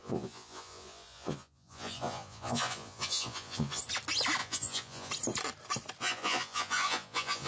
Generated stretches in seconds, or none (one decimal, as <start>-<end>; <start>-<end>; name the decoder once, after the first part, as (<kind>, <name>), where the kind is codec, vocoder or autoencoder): 0.0-3.8 (vocoder, Vocos); 4.4-5.1; 6.0-7.5